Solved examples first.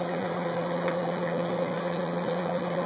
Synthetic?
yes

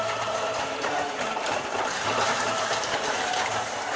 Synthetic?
yes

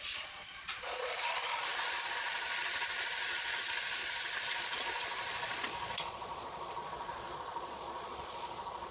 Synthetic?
yes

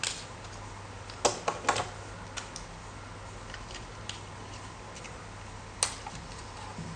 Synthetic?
no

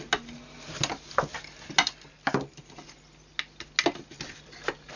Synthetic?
no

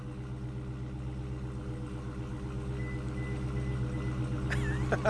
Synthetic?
no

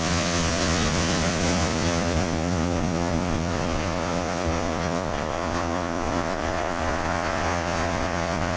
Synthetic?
yes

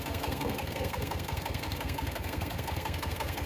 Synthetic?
yes